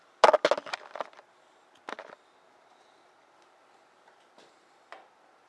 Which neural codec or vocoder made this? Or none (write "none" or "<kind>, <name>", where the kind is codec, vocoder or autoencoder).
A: none